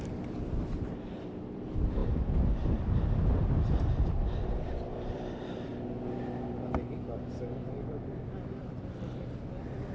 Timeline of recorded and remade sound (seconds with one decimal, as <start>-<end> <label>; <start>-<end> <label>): 0.0-2.0 remade; 2.0-4.0 recorded; 4.0-5.7 remade; 5.7-7.7 recorded; 7.7-9.9 remade